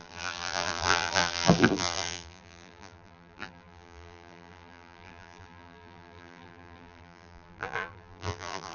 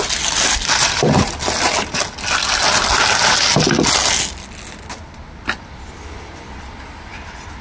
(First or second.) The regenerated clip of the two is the first